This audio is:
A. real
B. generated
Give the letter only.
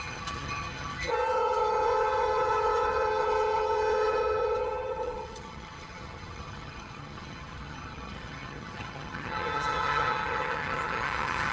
B